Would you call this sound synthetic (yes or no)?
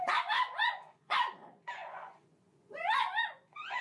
yes